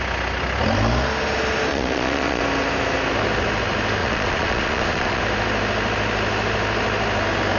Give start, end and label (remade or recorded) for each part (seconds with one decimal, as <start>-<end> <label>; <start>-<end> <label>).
0.0-1.7 recorded; 1.7-2.4 remade; 2.4-4.0 recorded; 4.0-5.2 remade; 5.2-7.6 recorded